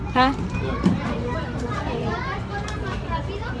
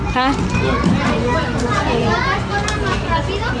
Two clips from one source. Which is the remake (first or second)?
first